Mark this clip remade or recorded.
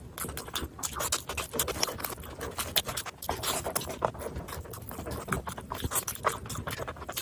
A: recorded